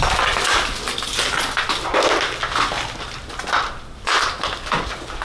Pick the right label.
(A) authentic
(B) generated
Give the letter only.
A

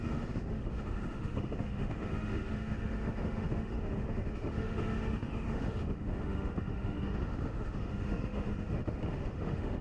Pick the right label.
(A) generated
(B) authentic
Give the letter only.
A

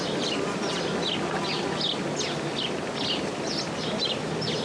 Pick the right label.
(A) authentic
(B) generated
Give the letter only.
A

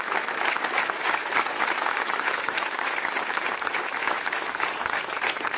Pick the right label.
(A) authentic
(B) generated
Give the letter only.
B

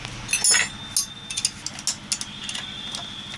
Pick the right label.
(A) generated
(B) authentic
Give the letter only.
B